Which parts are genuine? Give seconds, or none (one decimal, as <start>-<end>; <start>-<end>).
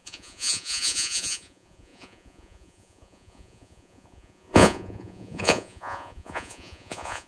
none